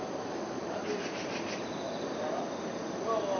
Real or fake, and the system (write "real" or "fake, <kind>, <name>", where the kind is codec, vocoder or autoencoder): real